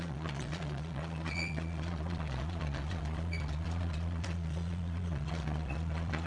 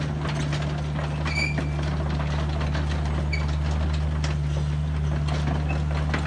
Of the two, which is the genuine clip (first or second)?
second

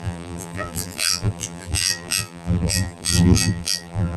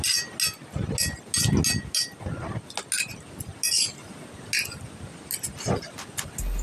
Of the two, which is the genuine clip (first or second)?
second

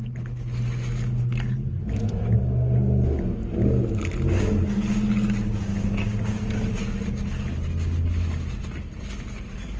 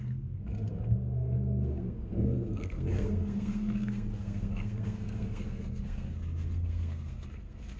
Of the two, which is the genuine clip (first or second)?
first